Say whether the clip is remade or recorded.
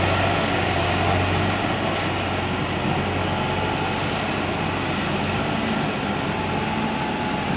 recorded